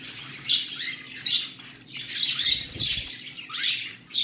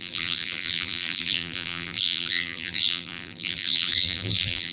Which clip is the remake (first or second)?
second